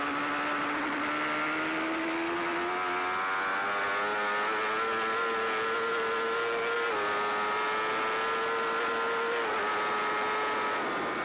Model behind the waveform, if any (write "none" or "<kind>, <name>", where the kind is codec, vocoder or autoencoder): none